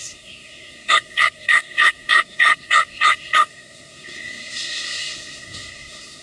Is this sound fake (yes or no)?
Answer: yes